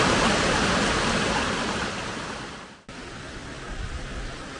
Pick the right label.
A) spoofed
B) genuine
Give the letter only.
B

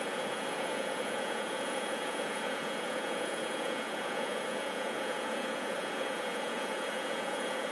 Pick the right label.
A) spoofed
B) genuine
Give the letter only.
A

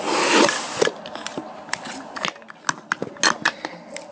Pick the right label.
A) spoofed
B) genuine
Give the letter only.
B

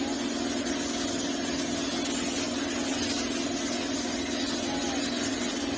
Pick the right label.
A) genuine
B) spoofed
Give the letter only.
A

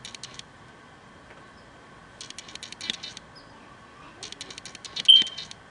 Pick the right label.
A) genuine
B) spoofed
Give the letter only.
A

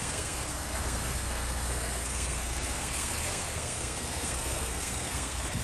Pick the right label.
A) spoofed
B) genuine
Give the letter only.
A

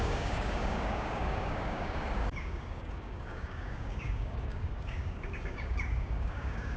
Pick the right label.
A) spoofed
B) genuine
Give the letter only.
A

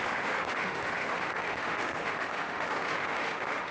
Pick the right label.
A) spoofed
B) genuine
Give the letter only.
A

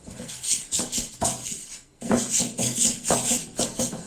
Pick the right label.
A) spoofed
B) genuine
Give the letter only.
A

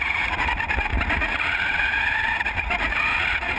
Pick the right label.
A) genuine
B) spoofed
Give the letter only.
B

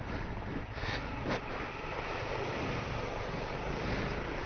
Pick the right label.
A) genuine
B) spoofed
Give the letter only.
A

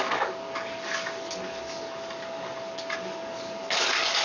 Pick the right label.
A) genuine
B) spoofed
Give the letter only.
B